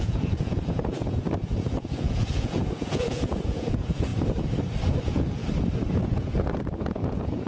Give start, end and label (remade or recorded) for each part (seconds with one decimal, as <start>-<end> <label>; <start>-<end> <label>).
0.0-4.1 remade; 4.1-5.0 recorded; 5.0-5.4 remade; 5.4-6.1 recorded; 6.1-7.5 remade